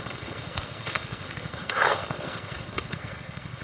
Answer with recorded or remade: remade